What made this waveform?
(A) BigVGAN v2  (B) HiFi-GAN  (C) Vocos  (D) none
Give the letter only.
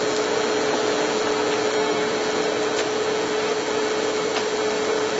D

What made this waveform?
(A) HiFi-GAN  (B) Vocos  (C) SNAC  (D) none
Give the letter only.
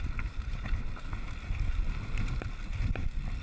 D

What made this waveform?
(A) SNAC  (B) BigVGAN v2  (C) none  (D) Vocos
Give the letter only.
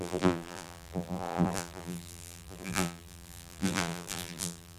B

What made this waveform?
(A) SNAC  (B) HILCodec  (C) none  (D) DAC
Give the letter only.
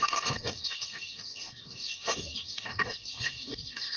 D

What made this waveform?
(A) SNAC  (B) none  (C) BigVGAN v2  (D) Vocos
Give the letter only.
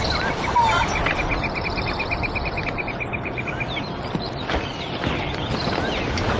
C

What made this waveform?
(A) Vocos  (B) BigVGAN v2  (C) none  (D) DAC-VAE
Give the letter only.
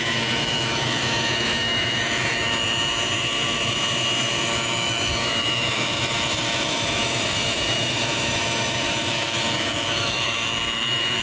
D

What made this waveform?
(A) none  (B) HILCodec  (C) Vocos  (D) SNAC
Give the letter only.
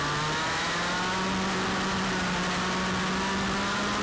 A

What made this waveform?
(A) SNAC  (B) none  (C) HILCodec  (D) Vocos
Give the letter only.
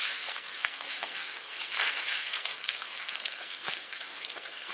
A